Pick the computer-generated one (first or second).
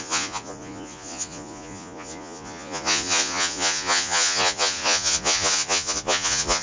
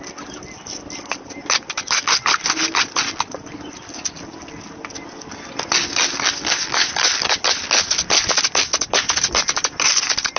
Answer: first